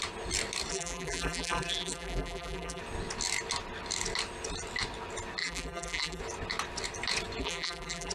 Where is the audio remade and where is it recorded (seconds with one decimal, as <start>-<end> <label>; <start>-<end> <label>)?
0.0-0.7 recorded; 0.7-2.8 remade; 2.8-5.4 recorded; 5.4-6.2 remade; 6.2-7.4 recorded; 7.4-8.1 remade